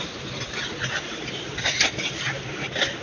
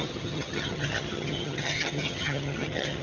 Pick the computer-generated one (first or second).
second